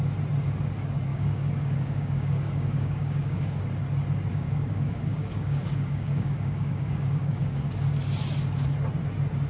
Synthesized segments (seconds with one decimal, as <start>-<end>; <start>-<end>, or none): 1.1-3.6; 4.3-7.7